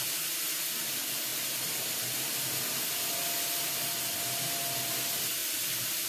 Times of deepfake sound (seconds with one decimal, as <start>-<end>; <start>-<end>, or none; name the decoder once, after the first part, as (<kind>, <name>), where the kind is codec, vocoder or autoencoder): none